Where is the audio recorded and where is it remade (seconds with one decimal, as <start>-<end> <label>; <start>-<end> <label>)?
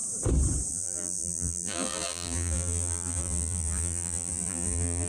0.0-0.7 recorded; 0.7-5.1 remade